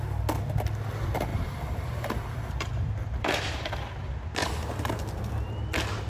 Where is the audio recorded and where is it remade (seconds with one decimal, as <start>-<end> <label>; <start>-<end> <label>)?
0.0-1.3 recorded; 1.3-3.9 remade; 3.9-4.4 recorded; 4.4-4.9 remade; 4.9-6.1 recorded